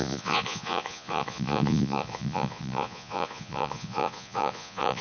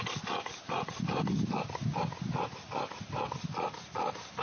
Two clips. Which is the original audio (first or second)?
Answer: second